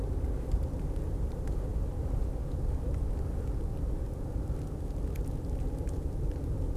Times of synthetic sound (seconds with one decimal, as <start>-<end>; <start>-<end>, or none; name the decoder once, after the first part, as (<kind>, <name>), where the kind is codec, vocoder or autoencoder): none